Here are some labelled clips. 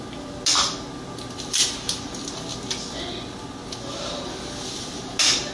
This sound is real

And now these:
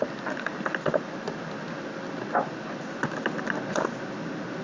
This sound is real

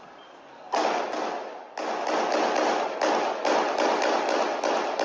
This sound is real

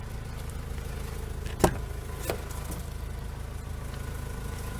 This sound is real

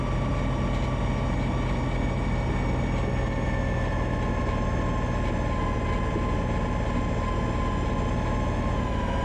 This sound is real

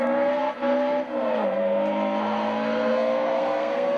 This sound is fake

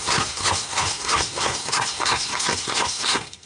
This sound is fake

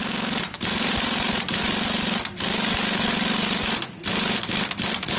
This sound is real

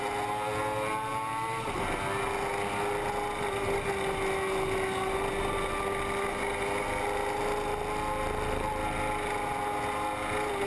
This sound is real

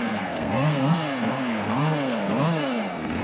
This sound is fake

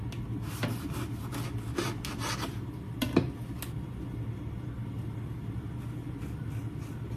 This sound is real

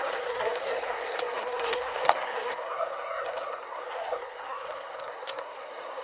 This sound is fake